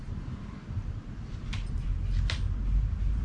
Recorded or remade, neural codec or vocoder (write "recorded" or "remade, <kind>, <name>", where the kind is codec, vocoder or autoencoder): recorded